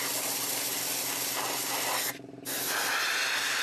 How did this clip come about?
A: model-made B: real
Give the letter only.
B